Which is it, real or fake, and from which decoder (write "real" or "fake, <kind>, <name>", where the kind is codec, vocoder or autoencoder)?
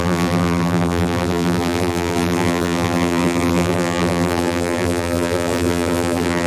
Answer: fake, vocoder, BigVGAN v2